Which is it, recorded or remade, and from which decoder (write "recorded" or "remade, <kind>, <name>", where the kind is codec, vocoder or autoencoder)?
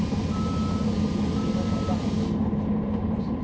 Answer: recorded